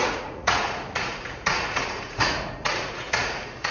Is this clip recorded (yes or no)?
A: no